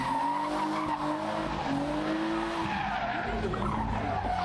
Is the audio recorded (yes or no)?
yes